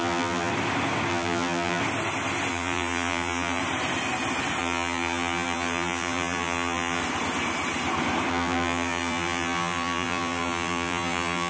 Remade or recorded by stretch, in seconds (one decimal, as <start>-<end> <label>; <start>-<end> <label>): 0.0-0.5 remade; 0.5-1.1 recorded; 1.1-1.8 remade; 1.8-2.5 recorded; 2.5-3.6 remade; 3.6-4.6 recorded; 4.6-7.0 remade; 7.0-8.3 recorded; 8.3-11.5 remade